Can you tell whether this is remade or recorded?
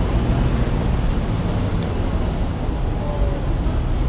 recorded